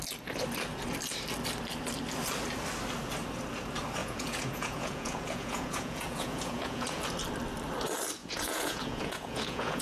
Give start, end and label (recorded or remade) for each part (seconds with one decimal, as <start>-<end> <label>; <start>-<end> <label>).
0.0-4.0 recorded; 4.0-7.0 remade; 7.0-8.2 recorded; 8.2-9.8 remade